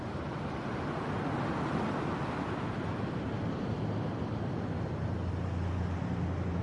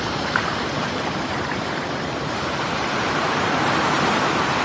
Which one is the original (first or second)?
first